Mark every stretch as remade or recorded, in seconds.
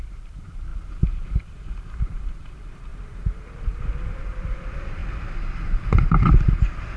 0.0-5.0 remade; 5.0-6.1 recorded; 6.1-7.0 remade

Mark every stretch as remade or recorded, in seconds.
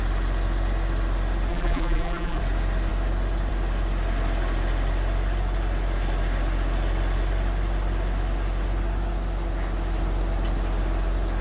0.0-1.5 recorded; 1.5-2.4 remade; 2.4-11.4 recorded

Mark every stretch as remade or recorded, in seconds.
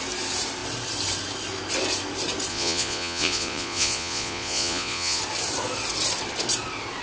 0.0-2.5 recorded; 2.5-5.2 remade; 5.2-7.0 recorded